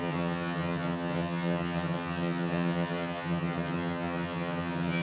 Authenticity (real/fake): fake